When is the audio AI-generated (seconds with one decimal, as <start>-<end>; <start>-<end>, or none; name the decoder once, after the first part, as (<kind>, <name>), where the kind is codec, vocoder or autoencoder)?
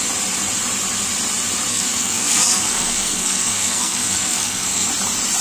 1.7-4.9 (codec, SNAC)